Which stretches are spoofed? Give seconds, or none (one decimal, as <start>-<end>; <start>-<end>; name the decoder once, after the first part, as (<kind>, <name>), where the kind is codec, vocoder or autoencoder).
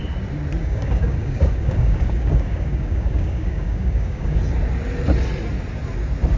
0.6-4.4 (codec, DAC)